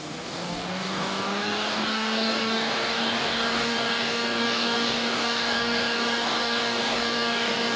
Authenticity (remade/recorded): remade